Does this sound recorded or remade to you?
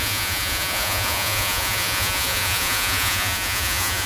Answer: remade